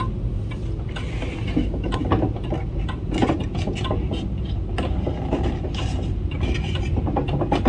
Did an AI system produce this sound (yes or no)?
no